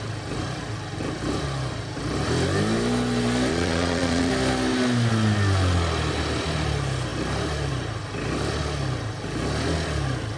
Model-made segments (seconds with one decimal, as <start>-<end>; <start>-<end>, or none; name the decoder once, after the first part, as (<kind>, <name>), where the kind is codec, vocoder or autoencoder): 3.5-4.3 (vocoder, Vocos)